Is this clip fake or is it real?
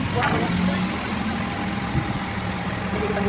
real